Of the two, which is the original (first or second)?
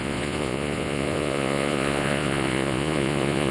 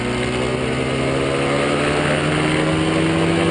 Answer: second